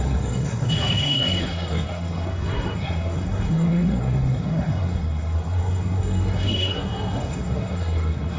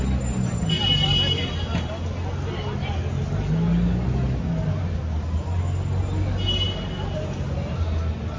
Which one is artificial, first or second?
first